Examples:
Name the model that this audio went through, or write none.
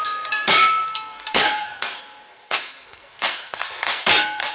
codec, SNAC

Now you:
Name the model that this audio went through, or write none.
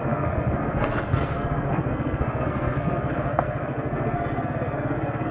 codec, SNAC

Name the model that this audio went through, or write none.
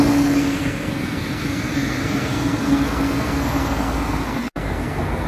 codec, SNAC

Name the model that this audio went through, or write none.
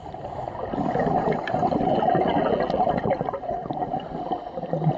none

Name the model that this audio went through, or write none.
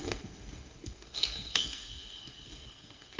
codec, SNAC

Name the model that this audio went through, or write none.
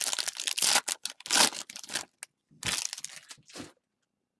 none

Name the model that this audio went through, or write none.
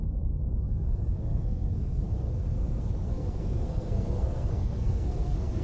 codec, SNAC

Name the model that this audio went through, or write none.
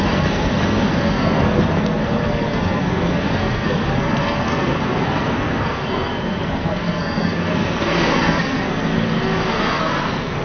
codec, SNAC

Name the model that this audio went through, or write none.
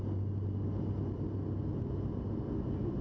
none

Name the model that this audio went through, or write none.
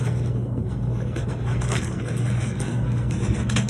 codec, SNAC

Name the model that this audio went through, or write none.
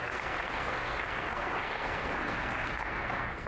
codec, SNAC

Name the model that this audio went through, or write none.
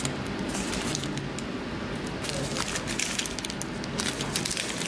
none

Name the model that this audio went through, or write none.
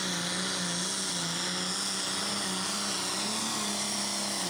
none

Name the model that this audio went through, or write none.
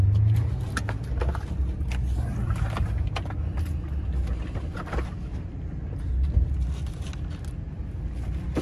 none